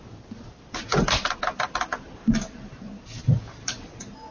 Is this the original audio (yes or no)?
yes